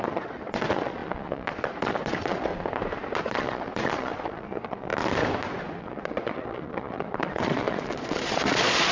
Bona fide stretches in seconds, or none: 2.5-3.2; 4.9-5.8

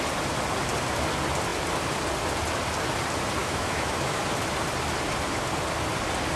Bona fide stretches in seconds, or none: 0.0-3.4; 4.2-6.4

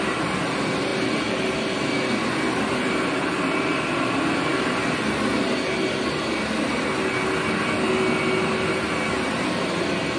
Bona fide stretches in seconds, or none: 4.5-9.1

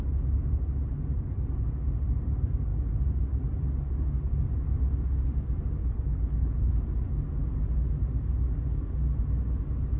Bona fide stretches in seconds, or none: 0.0-5.8; 6.7-10.0

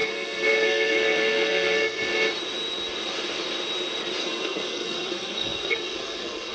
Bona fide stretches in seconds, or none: 2.1-4.2

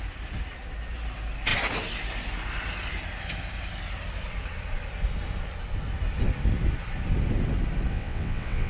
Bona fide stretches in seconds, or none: 0.0-7.9